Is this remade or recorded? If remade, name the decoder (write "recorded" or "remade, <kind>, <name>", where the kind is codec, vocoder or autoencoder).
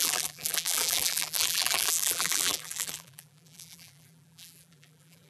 remade, vocoder, BigVGAN v2